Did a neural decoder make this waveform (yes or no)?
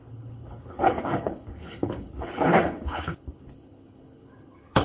yes